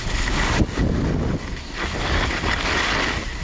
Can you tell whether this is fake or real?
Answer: real